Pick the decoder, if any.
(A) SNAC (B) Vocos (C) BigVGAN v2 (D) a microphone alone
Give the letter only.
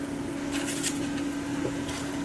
D